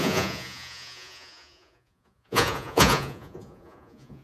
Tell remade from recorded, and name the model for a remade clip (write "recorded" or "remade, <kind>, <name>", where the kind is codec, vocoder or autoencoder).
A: remade, vocoder, Vocos